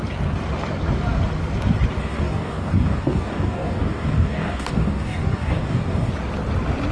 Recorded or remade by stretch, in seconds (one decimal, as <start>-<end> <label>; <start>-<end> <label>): 0.0-2.0 recorded; 2.0-6.1 remade; 6.1-6.9 recorded